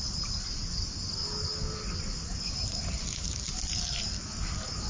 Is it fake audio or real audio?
real